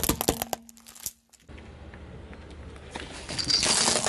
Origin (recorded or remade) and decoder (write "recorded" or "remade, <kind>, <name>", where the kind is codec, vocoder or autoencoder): recorded